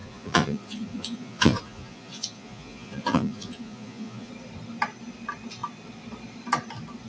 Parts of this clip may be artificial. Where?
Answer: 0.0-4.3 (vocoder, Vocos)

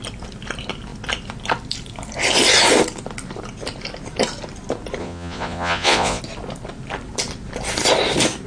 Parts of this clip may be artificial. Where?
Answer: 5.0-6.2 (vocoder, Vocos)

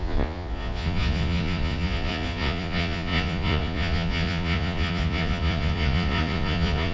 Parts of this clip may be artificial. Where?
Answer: 0.0-6.9 (vocoder, Vocos)

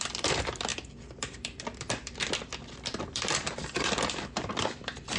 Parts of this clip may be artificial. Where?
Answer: 0.0-5.2 (vocoder, BigVGAN v2)

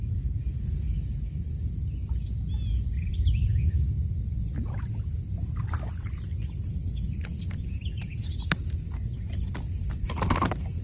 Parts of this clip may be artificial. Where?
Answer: 6.8-7.6 (vocoder, BigVGAN v2)

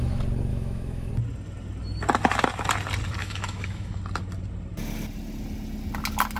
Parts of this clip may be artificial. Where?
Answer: 0.5-1.1 (autoencoder, DAC-VAE); 3.2-4.0

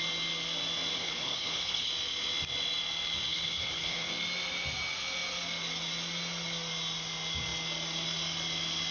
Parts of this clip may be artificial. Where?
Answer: 0.9-1.9 (codec, HILCodec); 3.3-4.1